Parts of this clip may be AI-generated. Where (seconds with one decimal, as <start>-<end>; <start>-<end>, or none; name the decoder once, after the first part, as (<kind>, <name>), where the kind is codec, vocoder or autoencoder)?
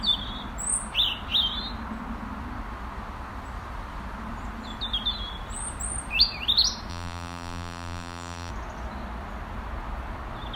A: 6.9-8.5 (vocoder, BigVGAN v2)